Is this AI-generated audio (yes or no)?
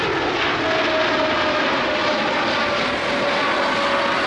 no